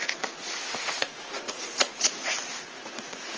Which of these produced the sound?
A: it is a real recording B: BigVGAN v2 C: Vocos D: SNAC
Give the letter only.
C